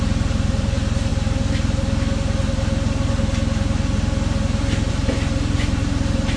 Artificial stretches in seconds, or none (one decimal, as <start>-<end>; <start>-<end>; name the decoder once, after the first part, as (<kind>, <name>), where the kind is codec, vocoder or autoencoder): 0.0-1.1 (vocoder, BigVGAN v2); 4.9-6.4